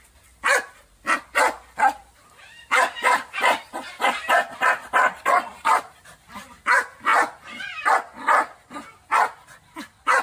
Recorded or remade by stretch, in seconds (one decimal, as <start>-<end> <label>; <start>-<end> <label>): 0.0-2.0 recorded; 2.0-5.8 remade; 5.8-10.2 recorded